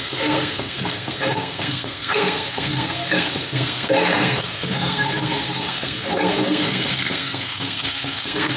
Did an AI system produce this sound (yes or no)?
yes